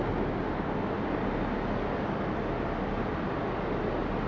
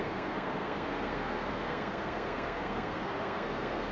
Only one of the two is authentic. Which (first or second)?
first